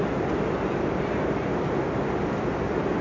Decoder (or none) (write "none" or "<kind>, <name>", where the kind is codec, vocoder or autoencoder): none